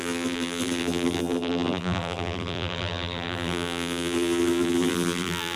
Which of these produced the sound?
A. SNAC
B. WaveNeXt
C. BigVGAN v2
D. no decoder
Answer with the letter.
C